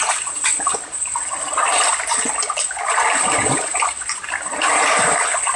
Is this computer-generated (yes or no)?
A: no